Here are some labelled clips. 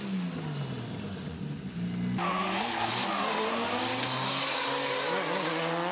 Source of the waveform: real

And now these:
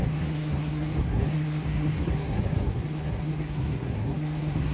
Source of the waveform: fake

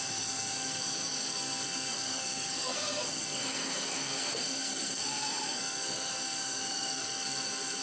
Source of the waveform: fake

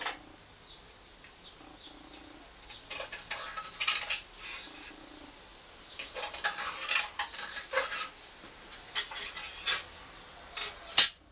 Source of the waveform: real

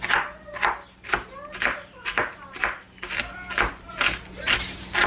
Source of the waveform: real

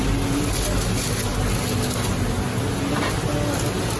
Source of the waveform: real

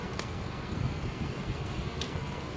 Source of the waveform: fake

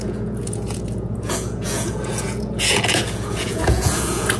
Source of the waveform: fake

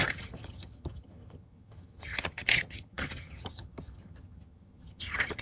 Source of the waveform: fake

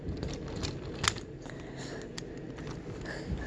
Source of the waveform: real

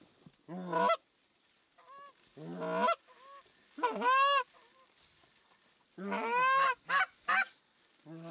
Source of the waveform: real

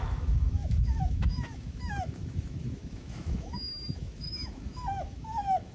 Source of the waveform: fake